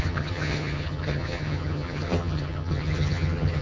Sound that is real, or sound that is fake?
fake